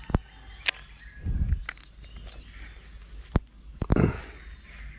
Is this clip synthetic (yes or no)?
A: no